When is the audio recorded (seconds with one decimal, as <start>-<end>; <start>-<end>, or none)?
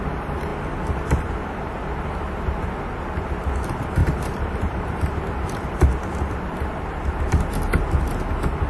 0.0-4.0; 7.6-8.7